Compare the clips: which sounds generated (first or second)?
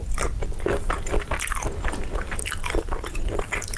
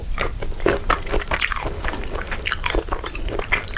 second